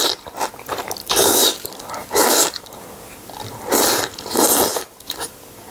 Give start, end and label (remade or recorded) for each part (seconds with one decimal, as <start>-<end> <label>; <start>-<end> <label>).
0.0-1.0 recorded; 1.0-3.3 remade; 3.3-4.7 recorded; 4.7-5.7 remade